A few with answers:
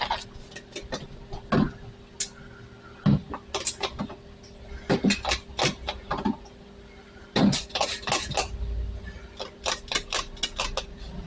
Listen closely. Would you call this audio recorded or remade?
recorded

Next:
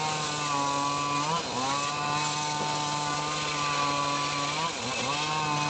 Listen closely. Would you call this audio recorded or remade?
recorded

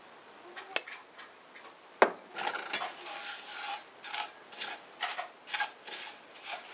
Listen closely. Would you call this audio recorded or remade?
recorded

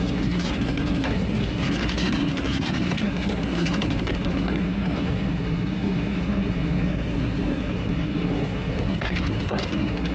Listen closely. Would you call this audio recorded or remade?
remade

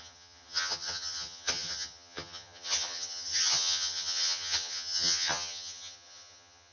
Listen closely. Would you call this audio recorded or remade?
remade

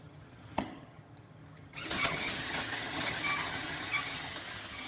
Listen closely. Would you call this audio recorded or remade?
remade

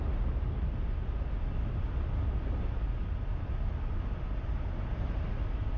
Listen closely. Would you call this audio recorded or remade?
recorded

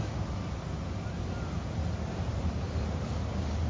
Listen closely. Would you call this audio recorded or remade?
recorded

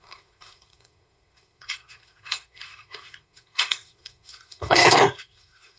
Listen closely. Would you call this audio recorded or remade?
remade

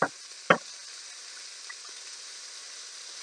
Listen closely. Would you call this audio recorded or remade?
recorded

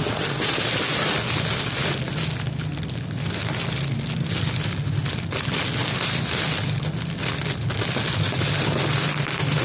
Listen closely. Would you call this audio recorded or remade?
recorded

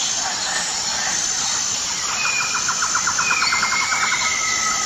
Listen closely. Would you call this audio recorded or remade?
recorded